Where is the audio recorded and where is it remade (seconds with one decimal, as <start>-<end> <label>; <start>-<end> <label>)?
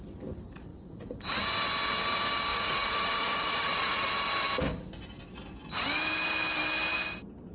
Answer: 0.0-0.7 recorded; 0.7-1.2 remade; 1.2-2.5 recorded; 2.5-4.1 remade; 4.1-7.5 recorded